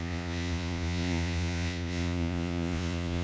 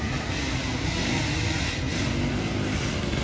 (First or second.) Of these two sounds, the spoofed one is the first